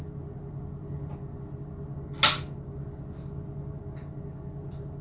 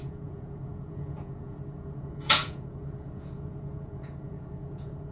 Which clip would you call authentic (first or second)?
first